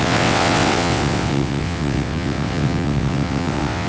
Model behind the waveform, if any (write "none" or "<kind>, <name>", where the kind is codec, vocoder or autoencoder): vocoder, WaveNeXt